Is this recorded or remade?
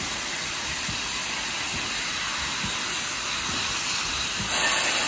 recorded